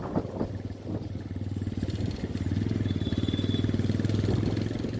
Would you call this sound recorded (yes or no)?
yes